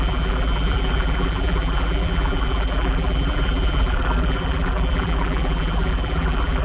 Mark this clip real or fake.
fake